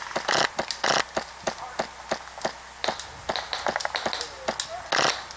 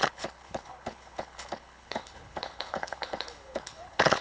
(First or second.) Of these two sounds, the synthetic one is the second